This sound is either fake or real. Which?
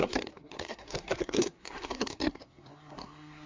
fake